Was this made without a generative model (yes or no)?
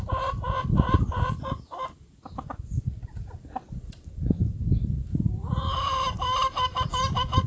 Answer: yes